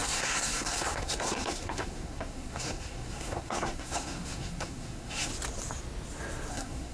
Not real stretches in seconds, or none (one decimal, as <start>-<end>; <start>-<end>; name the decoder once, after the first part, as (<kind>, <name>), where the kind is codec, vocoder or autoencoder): 0.0-5.3 (codec, SNAC); 6.5-6.9